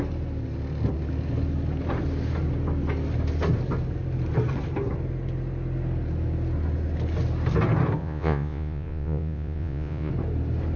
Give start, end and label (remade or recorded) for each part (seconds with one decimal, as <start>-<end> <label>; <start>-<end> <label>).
0.0-8.0 recorded; 8.0-10.1 remade; 10.1-10.8 recorded